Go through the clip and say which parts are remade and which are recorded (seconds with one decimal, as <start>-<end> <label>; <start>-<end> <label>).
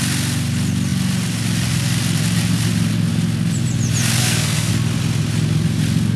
0.0-4.2 recorded; 4.2-4.7 remade; 4.7-6.2 recorded